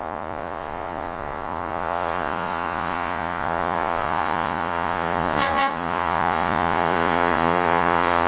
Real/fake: fake